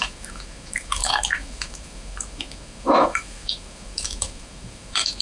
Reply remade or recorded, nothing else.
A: remade